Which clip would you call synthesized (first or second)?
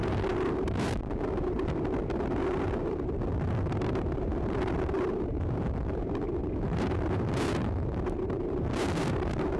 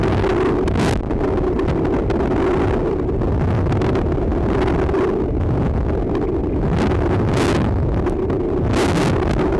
first